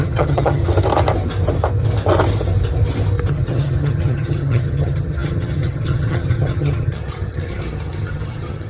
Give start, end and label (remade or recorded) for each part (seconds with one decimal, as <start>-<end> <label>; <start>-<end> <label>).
0.0-0.6 remade; 0.6-3.3 recorded; 3.3-8.7 remade